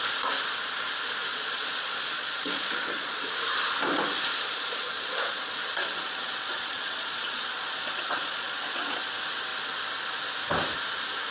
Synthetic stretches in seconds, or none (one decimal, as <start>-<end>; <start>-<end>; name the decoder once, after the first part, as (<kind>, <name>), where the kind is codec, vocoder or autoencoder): 1.3-3.2 (vocoder, Vocos); 4.3-9.0

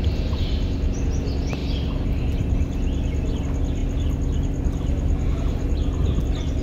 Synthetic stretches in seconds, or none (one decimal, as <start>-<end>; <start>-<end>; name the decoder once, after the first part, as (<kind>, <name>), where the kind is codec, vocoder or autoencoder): none

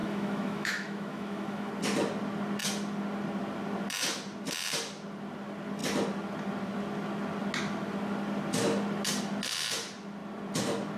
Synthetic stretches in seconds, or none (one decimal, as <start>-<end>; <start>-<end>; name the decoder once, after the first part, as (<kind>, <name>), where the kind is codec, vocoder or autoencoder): 0.0-1.7 (autoencoder, DAC-VAE)